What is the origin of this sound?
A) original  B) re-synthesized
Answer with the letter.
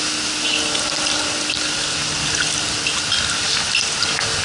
A